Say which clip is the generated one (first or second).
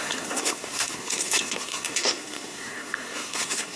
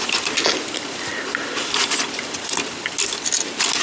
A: first